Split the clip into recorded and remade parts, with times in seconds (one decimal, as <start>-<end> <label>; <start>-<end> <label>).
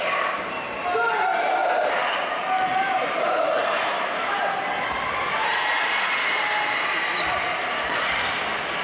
0.0-1.6 recorded; 1.6-6.0 remade; 6.0-8.8 recorded